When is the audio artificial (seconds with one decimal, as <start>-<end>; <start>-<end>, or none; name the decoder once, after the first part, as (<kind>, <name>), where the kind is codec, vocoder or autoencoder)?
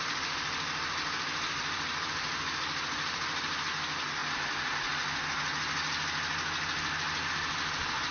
0.0-4.2 (vocoder, BigVGAN v2); 7.3-8.1